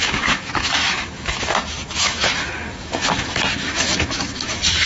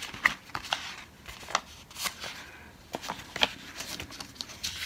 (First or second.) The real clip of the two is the second